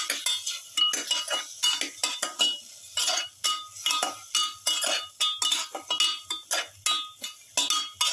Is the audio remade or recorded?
recorded